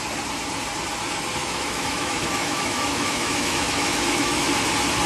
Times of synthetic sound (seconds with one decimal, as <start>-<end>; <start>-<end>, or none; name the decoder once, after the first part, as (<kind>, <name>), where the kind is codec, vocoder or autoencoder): 1.4-4.5 (autoencoder, DAC-VAE)